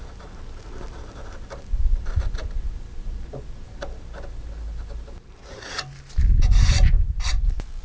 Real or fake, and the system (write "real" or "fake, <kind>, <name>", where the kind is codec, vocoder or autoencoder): real